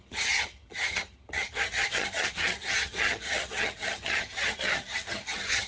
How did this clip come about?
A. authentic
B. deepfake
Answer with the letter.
B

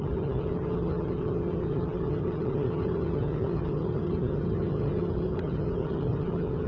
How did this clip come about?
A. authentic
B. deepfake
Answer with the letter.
B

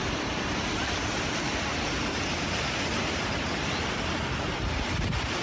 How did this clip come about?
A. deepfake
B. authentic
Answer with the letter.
B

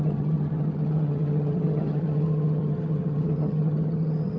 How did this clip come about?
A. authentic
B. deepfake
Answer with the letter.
B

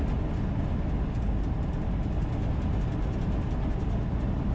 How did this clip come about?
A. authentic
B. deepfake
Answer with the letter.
A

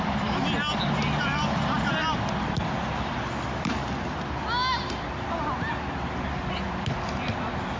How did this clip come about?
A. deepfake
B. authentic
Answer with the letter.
B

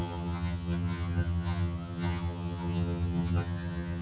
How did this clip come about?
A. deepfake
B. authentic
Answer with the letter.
A